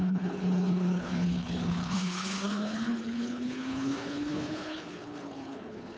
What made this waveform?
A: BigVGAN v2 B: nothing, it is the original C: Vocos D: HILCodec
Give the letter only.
D